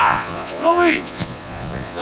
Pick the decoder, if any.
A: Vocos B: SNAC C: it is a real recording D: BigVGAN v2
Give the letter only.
A